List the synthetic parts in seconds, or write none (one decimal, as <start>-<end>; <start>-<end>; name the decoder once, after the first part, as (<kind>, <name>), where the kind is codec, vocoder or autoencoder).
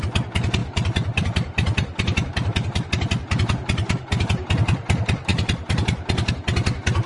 0.6-2.9 (vocoder, BigVGAN v2)